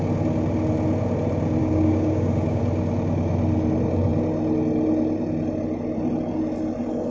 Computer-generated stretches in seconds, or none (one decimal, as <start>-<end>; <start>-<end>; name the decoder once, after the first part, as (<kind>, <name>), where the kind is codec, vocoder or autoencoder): 1.6-2.6 (codec, DAC)